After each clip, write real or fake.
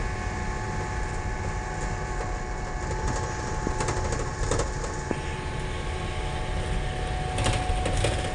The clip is real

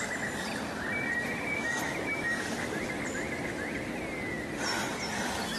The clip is real